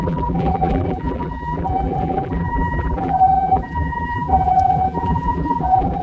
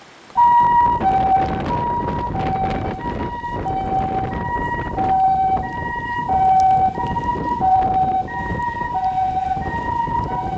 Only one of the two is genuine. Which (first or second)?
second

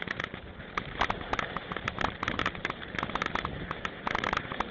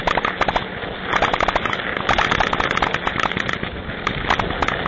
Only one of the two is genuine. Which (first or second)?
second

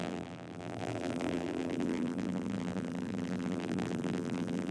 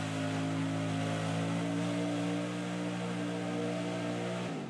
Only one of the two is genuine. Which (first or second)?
second